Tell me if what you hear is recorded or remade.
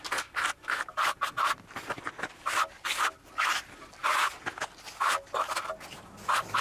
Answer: recorded